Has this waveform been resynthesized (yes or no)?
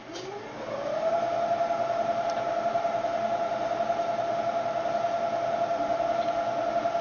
no